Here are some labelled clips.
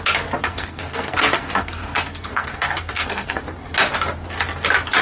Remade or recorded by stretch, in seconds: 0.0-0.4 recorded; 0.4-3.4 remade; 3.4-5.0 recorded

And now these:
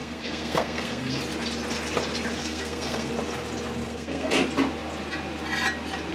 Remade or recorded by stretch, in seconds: 0.0-1.2 remade; 1.2-2.4 recorded; 2.4-3.1 remade; 3.1-3.8 recorded; 3.8-4.3 remade; 4.3-6.1 recorded

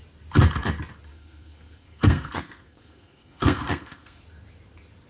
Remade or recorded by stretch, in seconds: 0.0-1.1 recorded; 1.1-4.2 remade; 4.2-5.1 recorded

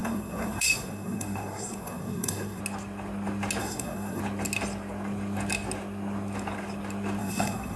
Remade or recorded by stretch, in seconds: 0.0-2.6 remade; 2.6-3.6 recorded; 3.6-4.2 remade; 4.2-7.2 recorded; 7.2-7.8 remade

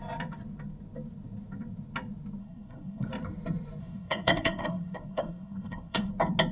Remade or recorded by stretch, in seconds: 0.0-2.4 recorded; 2.4-3.1 remade; 3.1-3.8 recorded; 3.8-6.1 remade; 6.1-6.5 recorded

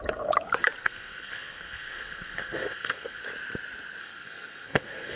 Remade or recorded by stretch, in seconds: 0.0-0.8 recorded; 0.8-3.2 remade; 3.2-4.0 recorded; 4.0-5.2 remade

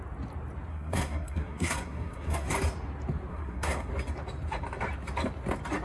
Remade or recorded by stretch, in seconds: 0.0-0.7 recorded; 0.7-2.5 remade; 2.5-3.3 recorded; 3.3-3.9 remade; 3.9-5.8 recorded